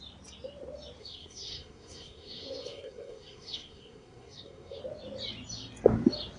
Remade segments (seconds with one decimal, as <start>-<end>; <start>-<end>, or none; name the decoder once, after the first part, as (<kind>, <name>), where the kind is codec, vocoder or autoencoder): 1.0-4.8 (codec, SNAC)

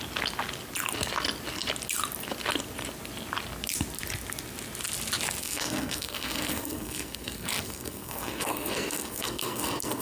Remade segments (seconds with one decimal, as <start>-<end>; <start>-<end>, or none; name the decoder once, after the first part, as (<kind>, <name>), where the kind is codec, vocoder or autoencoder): 5.4-10.0 (codec, SNAC)

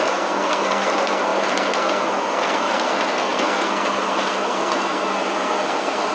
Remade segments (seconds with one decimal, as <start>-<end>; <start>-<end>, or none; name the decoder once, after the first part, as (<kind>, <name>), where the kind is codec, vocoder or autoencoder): 0.0-6.1 (codec, SNAC)

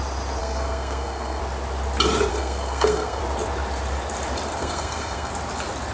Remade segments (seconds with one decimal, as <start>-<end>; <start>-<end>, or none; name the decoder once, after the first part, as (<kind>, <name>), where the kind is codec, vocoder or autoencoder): 0.4-1.4 (codec, SNAC); 2.3-3.2; 4.6-5.3

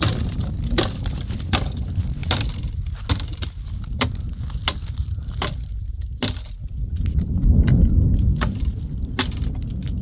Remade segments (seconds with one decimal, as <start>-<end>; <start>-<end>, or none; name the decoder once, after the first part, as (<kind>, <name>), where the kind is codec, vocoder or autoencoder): none

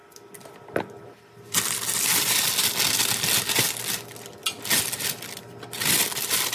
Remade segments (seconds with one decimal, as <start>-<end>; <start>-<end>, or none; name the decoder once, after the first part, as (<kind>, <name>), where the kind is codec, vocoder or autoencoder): none